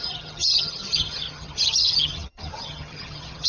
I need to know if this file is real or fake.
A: fake